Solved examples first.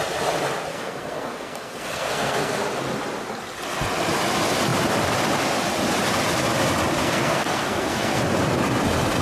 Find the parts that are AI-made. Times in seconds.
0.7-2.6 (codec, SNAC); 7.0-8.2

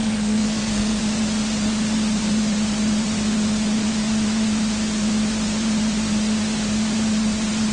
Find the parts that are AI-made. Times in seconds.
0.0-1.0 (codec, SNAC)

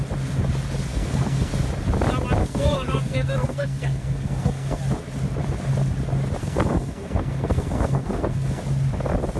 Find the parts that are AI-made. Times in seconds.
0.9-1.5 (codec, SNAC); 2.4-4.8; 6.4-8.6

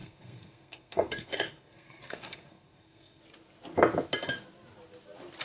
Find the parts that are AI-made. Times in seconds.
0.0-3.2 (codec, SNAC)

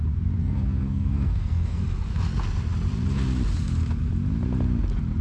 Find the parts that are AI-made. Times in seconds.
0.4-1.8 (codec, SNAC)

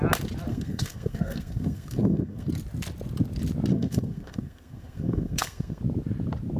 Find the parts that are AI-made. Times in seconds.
0.5-2.5 (codec, SNAC); 3.7-5.8